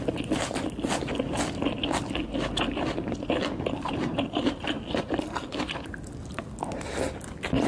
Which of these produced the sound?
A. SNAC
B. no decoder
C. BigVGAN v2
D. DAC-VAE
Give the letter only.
B